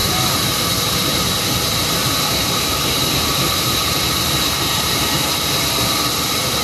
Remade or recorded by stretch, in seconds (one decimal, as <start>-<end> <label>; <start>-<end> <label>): 0.0-2.0 recorded; 2.0-6.0 remade; 6.0-6.6 recorded